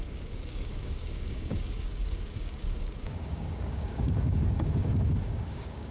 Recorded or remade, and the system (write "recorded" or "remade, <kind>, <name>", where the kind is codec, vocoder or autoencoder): remade, codec, DAC